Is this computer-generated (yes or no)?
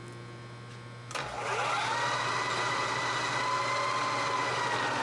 no